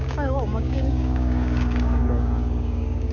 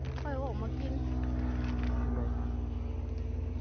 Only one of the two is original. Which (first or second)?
second